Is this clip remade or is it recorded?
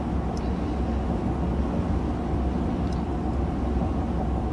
recorded